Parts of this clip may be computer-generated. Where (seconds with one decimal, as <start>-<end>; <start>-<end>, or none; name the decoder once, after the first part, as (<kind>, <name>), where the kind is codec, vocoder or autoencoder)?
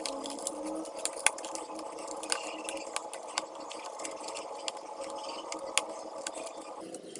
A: none